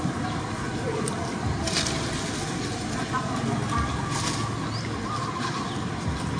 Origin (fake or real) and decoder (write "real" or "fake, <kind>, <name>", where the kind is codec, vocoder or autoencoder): real